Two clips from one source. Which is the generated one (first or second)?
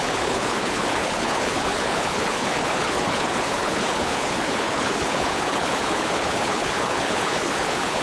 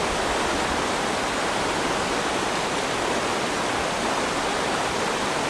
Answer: first